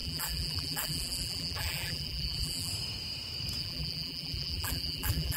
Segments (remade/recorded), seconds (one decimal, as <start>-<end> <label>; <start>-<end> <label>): 0.0-2.7 remade; 2.7-3.6 recorded; 3.6-5.4 remade